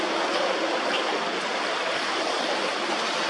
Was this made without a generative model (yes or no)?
yes